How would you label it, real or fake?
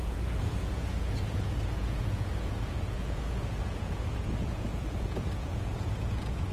fake